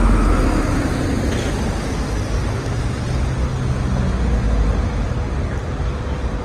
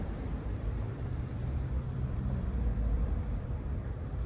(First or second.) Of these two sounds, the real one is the first